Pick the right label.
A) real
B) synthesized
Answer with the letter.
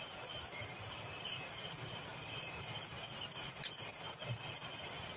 A